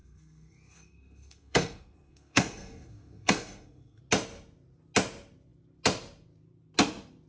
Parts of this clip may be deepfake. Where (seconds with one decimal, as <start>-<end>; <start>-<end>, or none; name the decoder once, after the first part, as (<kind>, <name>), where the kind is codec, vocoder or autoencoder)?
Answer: 0.0-4.0 (codec, SNAC)